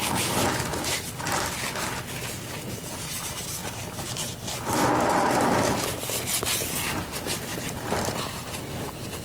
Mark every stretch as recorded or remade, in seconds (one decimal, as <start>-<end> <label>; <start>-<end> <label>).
0.0-3.6 recorded; 3.6-4.5 remade; 4.5-7.5 recorded; 7.5-8.1 remade; 8.1-9.2 recorded